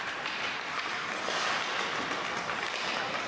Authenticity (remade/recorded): recorded